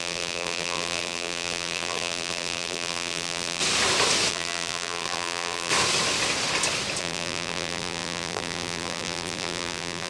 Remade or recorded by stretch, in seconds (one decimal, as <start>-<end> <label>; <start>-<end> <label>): 0.0-3.6 remade; 3.6-4.3 recorded; 4.3-5.7 remade; 5.7-7.0 recorded; 7.0-10.1 remade